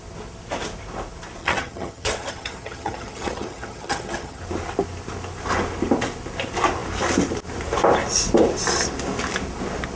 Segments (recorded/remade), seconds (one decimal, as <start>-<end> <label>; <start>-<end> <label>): 0.0-1.4 recorded; 1.4-4.4 remade; 4.4-10.0 recorded